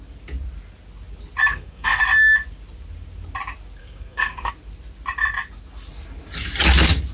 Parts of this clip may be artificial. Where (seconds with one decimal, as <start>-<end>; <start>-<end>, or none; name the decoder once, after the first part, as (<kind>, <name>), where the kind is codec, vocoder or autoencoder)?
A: 1.5-2.0 (codec, SNAC); 3.8-4.5